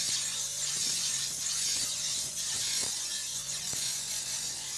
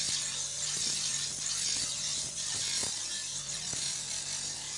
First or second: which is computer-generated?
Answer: first